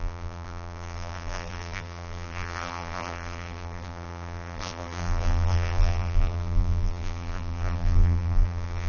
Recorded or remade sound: remade